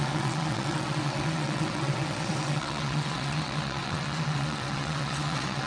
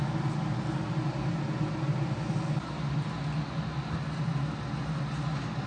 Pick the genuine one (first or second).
second